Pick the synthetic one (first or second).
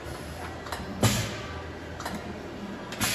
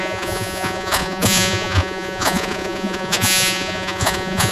second